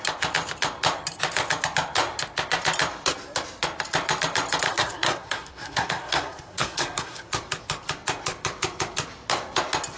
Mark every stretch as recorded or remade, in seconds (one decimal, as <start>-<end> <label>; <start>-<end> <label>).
0.0-4.7 recorded; 4.7-7.3 remade; 7.3-10.0 recorded